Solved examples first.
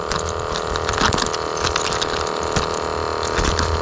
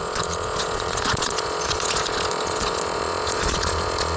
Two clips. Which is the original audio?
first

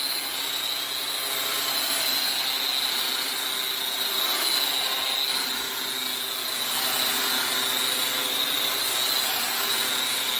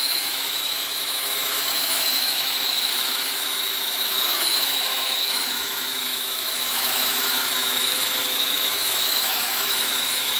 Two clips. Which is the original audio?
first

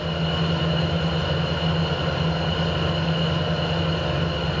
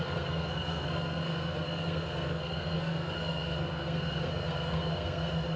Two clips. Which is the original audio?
first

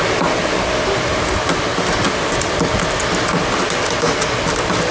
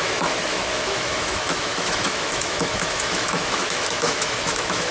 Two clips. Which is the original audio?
first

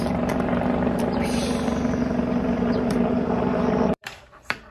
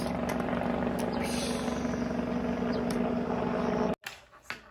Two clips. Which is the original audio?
second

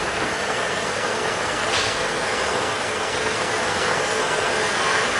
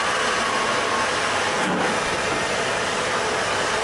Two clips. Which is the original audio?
second